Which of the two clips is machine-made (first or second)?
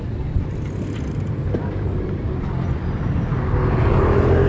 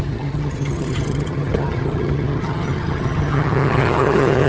second